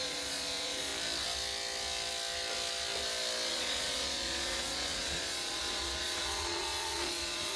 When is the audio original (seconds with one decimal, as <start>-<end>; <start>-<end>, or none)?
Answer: 0.9-3.5